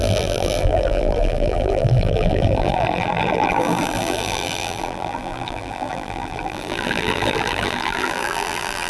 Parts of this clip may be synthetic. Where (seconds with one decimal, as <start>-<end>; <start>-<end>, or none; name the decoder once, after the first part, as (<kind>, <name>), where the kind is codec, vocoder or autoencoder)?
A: 0.0-8.9 (vocoder, BigVGAN v2)